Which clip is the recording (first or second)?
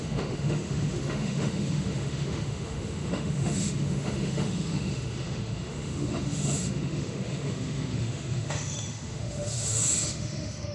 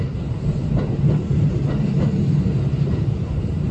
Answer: second